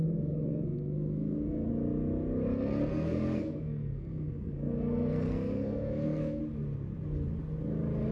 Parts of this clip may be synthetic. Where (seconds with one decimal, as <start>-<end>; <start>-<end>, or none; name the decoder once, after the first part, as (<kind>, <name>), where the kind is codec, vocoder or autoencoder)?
0.0-1.7 (codec, SNAC); 2.9-6.4